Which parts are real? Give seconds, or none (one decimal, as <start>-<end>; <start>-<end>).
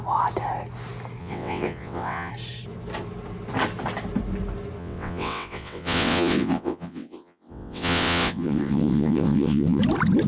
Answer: 0.0-1.2; 2.3-4.8; 9.8-10.3